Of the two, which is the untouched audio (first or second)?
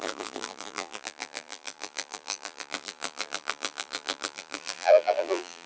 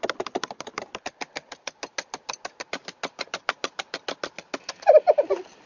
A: second